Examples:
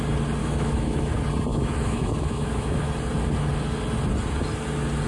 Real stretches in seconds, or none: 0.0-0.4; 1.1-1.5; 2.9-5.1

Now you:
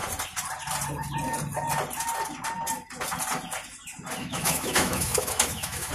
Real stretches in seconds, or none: 0.0-4.2

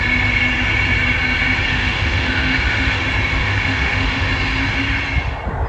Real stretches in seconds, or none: 0.0-1.7; 3.0-3.4; 4.3-5.7

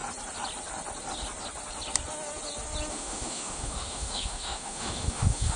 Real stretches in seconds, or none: 0.0-2.9